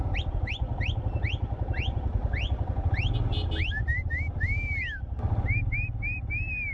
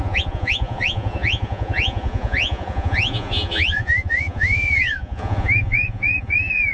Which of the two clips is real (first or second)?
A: first